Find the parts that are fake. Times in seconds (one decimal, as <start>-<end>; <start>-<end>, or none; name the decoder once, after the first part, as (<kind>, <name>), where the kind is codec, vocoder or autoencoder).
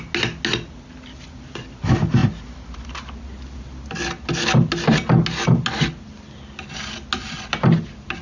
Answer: none